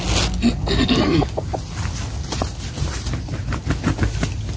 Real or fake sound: real